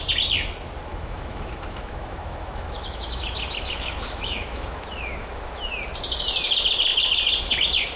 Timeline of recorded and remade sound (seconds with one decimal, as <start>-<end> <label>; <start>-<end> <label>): 0.0-0.9 recorded; 0.9-5.7 remade; 5.7-8.0 recorded